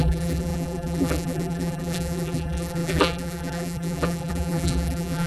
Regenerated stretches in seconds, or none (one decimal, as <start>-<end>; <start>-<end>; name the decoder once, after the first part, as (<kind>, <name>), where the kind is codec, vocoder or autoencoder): 0.0-5.3 (vocoder, BigVGAN v2)